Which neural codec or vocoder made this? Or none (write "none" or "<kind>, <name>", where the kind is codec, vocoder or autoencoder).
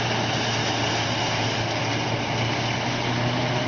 none